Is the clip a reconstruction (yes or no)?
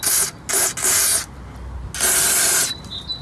no